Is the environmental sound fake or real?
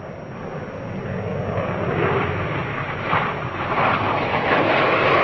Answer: real